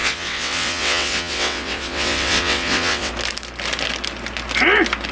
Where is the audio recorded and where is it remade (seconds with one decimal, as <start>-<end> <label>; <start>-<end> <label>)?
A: 0.0-3.1 remade; 3.1-5.1 recorded